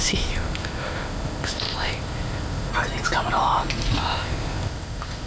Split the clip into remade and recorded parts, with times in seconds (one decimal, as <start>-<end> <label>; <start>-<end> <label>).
0.0-2.7 remade; 2.7-4.0 recorded; 4.0-5.3 remade